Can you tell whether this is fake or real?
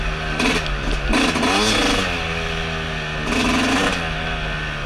real